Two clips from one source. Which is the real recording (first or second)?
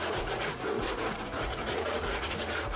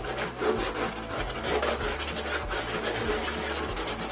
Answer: second